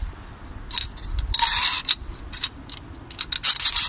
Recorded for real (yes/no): yes